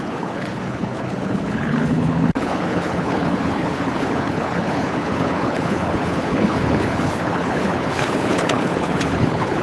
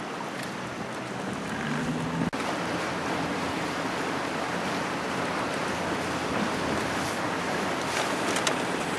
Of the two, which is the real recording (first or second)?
second